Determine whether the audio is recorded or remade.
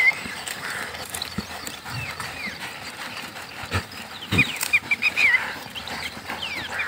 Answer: remade